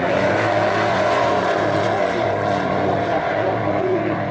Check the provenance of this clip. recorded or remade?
remade